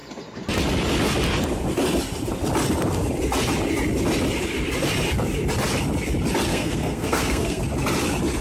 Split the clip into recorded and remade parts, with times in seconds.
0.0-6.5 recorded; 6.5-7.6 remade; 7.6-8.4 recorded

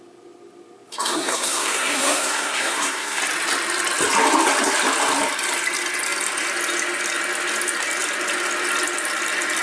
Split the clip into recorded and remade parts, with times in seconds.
0.0-0.9 recorded; 0.9-3.2 remade; 3.2-9.6 recorded

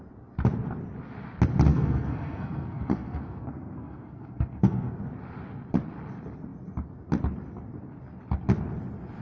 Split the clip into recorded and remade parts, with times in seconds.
0.0-1.7 recorded; 1.7-5.0 remade; 5.0-9.2 recorded

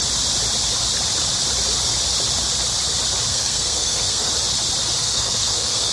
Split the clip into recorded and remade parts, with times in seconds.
0.0-3.3 recorded; 3.3-4.3 remade; 4.3-5.0 recorded; 5.0-5.9 remade

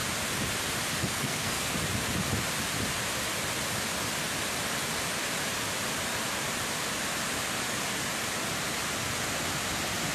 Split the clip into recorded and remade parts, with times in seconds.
0.0-1.0 recorded; 1.0-1.7 remade; 1.7-10.1 recorded

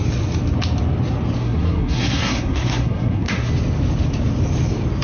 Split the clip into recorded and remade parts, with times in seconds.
0.0-1.4 recorded; 1.4-3.5 remade; 3.5-5.0 recorded